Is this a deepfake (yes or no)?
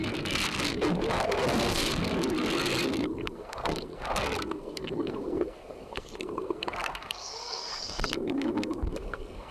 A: yes